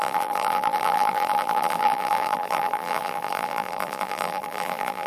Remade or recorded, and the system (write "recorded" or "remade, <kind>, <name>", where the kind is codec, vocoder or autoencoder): remade, vocoder, BigVGAN v2